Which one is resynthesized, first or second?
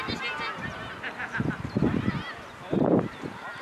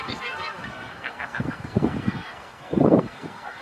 second